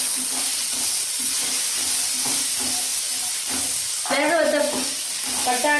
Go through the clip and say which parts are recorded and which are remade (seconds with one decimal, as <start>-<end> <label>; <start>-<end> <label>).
0.0-0.5 recorded; 0.5-1.3 remade; 1.3-5.8 recorded